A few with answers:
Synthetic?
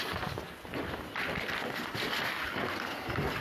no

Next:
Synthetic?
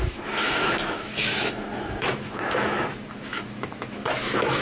yes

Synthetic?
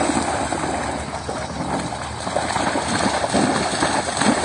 no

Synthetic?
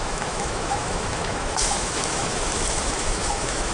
yes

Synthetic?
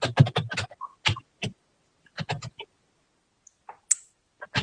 no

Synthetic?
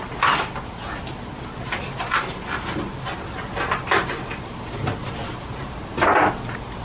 no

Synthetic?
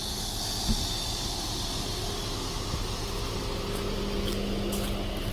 no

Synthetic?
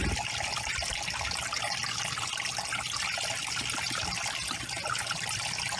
no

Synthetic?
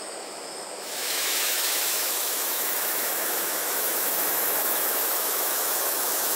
yes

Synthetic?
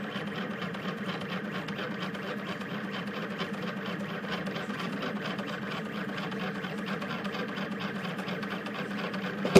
no